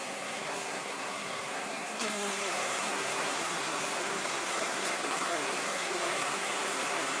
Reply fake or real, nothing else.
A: fake